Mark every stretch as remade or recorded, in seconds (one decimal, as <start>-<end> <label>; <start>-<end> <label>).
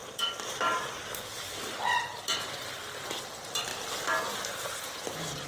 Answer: 0.0-2.6 recorded; 2.6-3.7 remade; 3.7-4.8 recorded; 4.8-5.5 remade